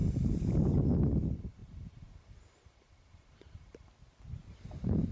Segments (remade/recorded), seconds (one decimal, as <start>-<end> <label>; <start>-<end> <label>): 0.0-0.5 remade; 0.5-1.6 recorded; 1.6-5.1 remade

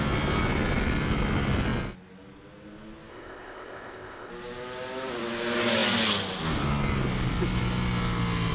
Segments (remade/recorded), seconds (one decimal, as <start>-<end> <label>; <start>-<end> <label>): 0.0-3.1 recorded; 3.1-4.3 remade; 4.3-8.5 recorded

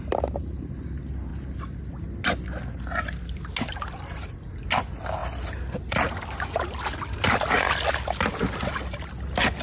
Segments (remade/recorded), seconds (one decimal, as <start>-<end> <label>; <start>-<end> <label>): 0.0-9.6 recorded

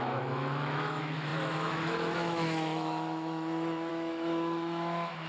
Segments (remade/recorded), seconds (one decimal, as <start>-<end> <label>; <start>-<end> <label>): 0.0-5.3 remade

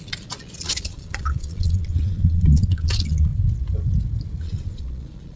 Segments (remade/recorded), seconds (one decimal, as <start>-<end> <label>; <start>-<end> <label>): 0.0-3.3 remade; 3.3-4.4 recorded; 4.4-5.4 remade